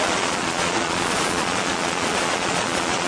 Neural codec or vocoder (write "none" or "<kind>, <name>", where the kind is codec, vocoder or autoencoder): vocoder, Vocos